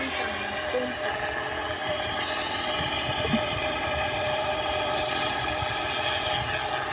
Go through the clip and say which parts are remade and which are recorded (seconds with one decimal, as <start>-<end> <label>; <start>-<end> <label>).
0.0-1.8 recorded; 1.8-5.5 remade; 5.5-6.9 recorded